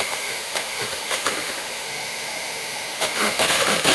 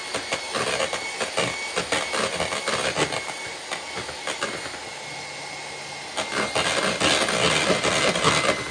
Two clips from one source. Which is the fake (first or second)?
first